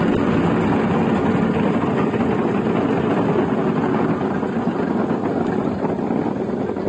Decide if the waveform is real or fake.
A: real